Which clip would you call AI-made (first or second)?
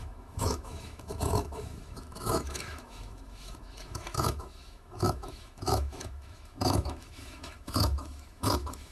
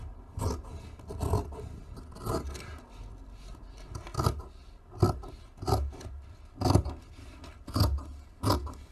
first